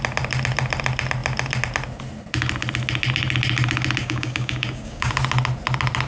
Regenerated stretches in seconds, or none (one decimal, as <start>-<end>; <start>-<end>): 4.0-5.1

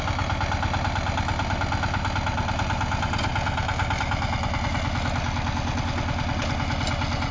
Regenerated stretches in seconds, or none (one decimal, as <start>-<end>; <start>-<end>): none